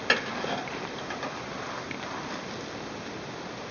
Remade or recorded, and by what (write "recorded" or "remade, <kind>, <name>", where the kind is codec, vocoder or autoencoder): recorded